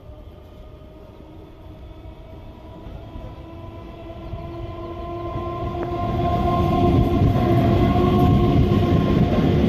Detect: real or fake real